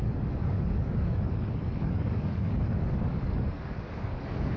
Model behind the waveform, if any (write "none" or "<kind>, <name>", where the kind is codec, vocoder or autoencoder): codec, DAC